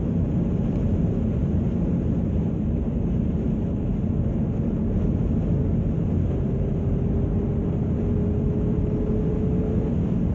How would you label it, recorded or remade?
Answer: recorded